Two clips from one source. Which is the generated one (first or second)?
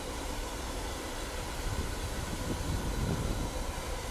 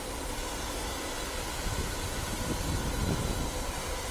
first